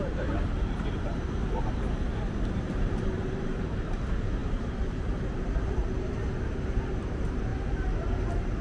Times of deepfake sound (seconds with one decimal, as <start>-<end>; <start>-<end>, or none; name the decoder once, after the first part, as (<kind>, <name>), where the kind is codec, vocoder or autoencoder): 0.0-1.4 (vocoder, BigVGAN v2); 2.5-7.5

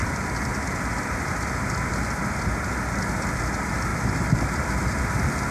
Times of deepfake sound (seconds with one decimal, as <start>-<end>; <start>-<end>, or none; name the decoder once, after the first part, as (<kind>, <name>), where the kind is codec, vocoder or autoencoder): none